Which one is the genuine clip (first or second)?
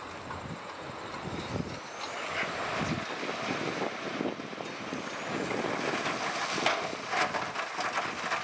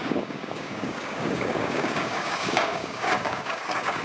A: first